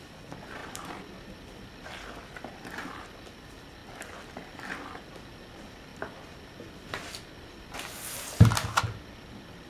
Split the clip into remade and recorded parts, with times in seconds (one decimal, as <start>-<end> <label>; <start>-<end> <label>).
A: 0.0-0.6 recorded; 0.6-3.4 remade; 3.4-9.7 recorded